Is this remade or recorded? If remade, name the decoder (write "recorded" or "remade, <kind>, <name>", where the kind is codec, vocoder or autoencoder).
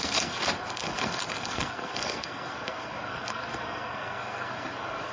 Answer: remade, codec, SNAC